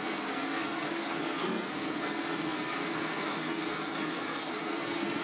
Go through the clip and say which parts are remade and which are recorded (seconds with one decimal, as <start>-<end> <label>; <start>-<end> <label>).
0.0-5.2 remade